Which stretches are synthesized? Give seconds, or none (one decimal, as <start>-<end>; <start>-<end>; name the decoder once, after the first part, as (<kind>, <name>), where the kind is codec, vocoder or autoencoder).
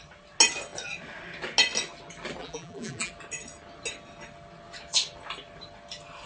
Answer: 2.4-3.1 (vocoder, BigVGAN v2)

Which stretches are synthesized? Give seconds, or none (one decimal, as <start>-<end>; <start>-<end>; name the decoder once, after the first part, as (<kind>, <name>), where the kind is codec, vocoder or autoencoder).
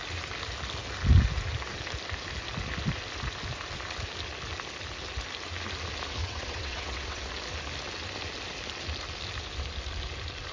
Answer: 6.2-7.2 (vocoder, WaveNeXt)